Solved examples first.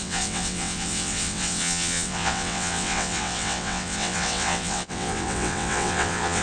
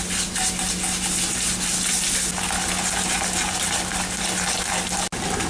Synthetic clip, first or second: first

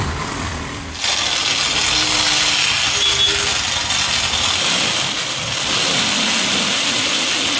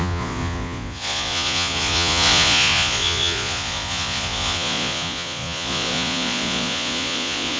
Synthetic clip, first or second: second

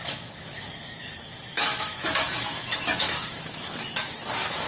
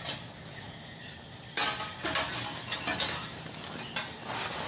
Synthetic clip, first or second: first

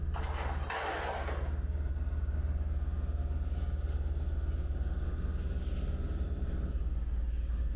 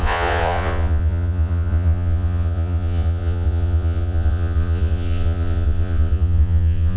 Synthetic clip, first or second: second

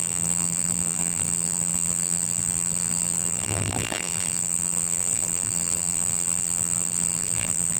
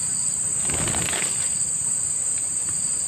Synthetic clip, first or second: first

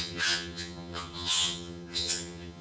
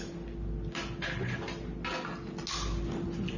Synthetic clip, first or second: first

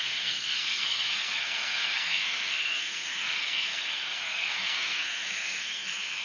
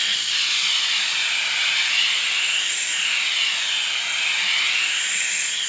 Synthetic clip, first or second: first